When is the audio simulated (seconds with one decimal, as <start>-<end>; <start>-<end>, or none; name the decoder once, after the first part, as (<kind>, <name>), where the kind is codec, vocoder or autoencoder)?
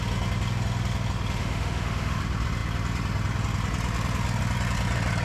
1.4-2.2 (autoencoder, DAC-VAE)